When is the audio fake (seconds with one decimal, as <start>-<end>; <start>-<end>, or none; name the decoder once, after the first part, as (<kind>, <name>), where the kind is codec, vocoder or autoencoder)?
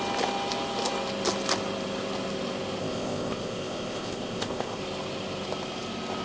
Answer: 2.8-4.8 (codec, ZipCodec)